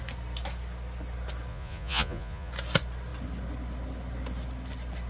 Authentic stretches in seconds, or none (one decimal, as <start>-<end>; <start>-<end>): 0.0-1.5; 2.5-5.1